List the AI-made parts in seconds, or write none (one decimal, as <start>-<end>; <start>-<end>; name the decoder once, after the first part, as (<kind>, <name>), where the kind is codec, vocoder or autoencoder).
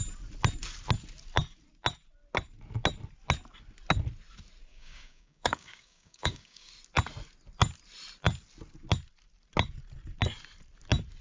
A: 4.7-6.7 (codec, DAC)